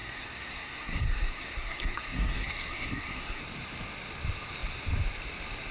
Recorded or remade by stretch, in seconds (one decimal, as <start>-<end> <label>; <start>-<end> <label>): 0.0-3.4 remade; 3.4-5.7 recorded